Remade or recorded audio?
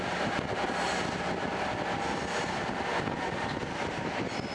recorded